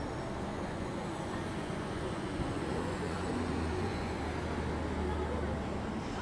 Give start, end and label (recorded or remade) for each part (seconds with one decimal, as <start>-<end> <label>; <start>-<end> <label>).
0.0-0.5 recorded; 0.5-4.2 remade; 4.2-6.2 recorded